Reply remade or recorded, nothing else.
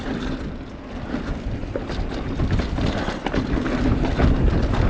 recorded